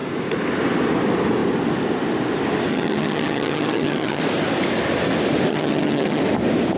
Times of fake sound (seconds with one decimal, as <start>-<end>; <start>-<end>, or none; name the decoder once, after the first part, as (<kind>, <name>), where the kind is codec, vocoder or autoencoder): 2.7-4.2 (vocoder, HiFi-GAN); 5.5-6.2